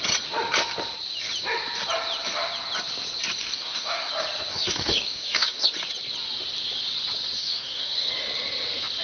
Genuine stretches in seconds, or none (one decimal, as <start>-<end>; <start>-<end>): 0.0-3.4; 4.1-4.5; 5.7-7.4; 8.1-9.0